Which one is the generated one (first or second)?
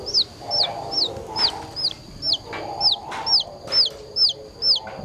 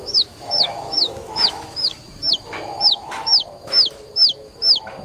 second